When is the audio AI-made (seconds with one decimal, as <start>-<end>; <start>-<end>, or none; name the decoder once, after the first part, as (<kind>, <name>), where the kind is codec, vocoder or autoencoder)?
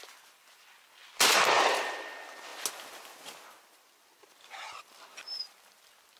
0.0-1.0 (vocoder, BigVGAN v2); 1.7-2.5; 3.6-6.2